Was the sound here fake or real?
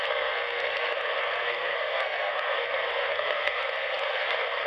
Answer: fake